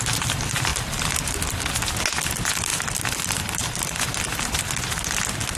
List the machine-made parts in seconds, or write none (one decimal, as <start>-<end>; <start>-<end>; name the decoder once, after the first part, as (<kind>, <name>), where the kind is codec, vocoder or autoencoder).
0.7-1.3 (vocoder, BigVGAN v2); 2.7-4.6